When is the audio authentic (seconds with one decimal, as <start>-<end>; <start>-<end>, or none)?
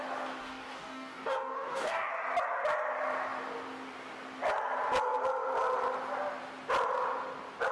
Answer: 0.0-0.4; 2.1-7.7